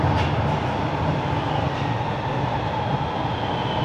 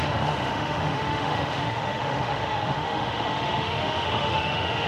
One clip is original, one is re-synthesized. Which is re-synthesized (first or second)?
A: second